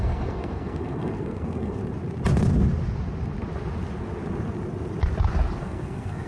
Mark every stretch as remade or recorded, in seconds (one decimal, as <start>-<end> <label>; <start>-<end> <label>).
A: 0.0-1.8 remade; 1.8-5.6 recorded; 5.6-6.3 remade

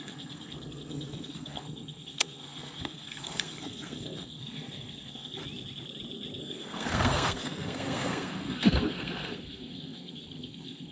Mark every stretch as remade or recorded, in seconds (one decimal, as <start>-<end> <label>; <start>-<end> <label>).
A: 0.0-5.4 remade; 5.4-6.4 recorded; 6.4-10.9 remade

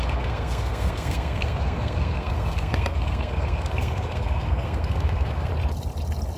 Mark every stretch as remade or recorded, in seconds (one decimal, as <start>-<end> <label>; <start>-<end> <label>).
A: 0.0-5.5 remade; 5.5-6.4 recorded

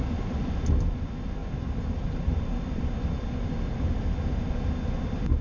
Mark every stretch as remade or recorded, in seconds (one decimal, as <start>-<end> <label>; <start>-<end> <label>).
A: 0.0-5.4 recorded

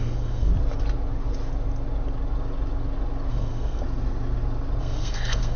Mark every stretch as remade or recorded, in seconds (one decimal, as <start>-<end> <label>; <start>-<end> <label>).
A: 0.0-0.5 remade; 0.5-3.3 recorded; 3.3-3.8 remade; 3.8-4.8 recorded; 4.8-5.6 remade

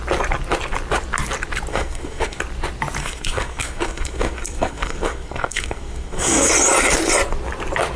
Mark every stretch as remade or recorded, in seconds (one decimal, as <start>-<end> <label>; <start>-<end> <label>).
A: 0.0-1.7 recorded; 1.7-2.4 remade; 2.4-3.0 recorded; 3.0-6.5 remade; 6.5-8.0 recorded